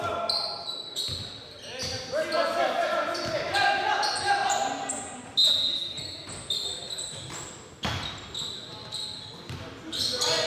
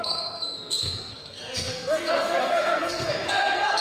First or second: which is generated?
second